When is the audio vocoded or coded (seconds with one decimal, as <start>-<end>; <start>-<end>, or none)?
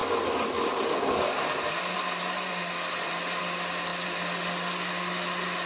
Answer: none